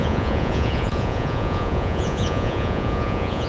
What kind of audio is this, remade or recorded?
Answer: remade